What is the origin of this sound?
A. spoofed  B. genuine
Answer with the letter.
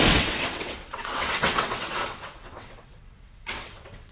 A